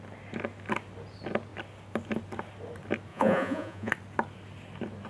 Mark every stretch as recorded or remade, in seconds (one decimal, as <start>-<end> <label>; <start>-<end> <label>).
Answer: 0.0-3.1 recorded; 3.1-3.9 remade; 3.9-5.1 recorded